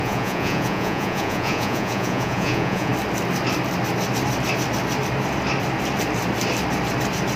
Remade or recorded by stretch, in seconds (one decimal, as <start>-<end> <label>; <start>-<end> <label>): 0.0-2.9 remade; 2.9-7.4 recorded